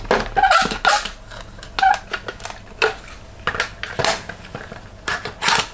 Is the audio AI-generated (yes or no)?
no